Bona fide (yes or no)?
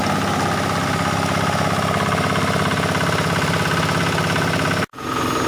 yes